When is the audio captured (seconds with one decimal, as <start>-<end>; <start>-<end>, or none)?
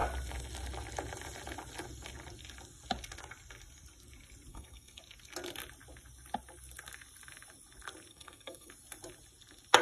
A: 0.0-4.5; 5.0-8.1; 8.7-9.8